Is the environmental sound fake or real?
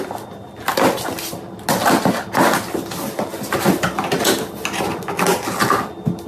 real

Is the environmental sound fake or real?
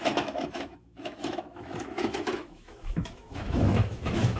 fake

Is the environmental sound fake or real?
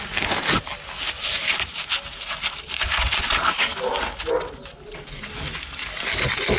real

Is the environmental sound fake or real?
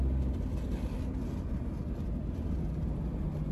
real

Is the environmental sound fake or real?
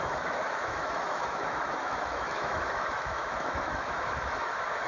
fake